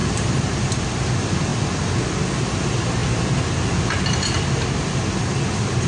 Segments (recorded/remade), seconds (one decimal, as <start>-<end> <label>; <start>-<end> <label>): 0.0-1.1 remade; 1.1-5.9 recorded